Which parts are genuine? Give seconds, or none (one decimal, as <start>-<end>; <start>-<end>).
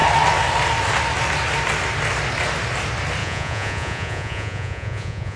0.0-3.2